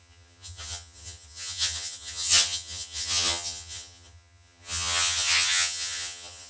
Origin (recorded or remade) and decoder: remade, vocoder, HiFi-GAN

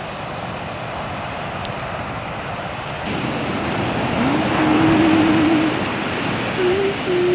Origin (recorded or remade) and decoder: recorded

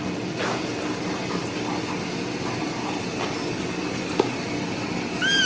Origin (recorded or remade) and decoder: recorded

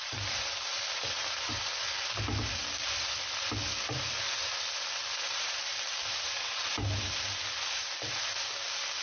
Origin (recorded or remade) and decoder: recorded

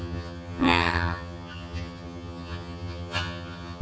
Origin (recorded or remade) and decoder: remade, vocoder, HiFi-GAN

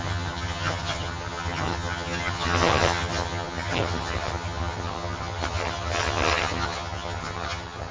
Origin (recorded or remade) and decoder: remade, vocoder, HiFi-GAN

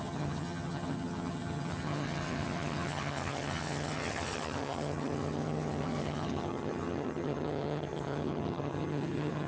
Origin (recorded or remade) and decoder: remade, vocoder, HiFi-GAN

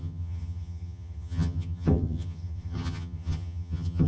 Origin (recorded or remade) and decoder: remade, vocoder, HiFi-GAN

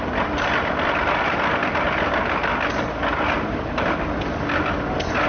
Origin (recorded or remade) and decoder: recorded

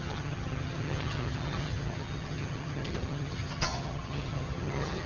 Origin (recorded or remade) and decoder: remade, vocoder, HiFi-GAN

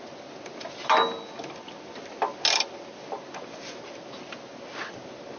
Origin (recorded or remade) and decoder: recorded